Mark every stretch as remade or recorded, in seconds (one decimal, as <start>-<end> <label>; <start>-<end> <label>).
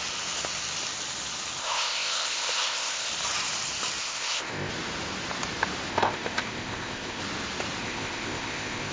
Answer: 0.0-1.6 recorded; 1.6-3.1 remade; 3.1-4.0 recorded; 4.0-4.7 remade; 4.7-5.9 recorded; 5.9-7.2 remade; 7.2-7.8 recorded; 7.8-8.9 remade